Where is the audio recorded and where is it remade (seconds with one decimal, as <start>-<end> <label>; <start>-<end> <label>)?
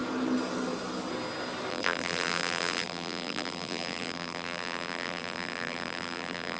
0.0-1.7 recorded; 1.7-6.6 remade